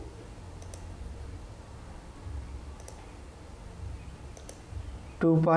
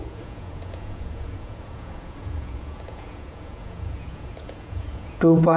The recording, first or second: first